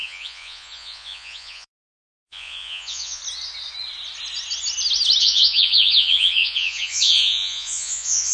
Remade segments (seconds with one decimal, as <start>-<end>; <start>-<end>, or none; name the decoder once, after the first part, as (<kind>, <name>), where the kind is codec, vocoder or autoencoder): 0.0-3.2 (vocoder, Vocos); 5.2-8.3